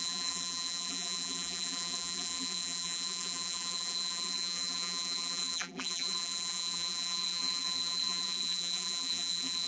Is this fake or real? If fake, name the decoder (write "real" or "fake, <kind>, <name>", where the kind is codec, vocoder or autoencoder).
fake, vocoder, BigVGAN v2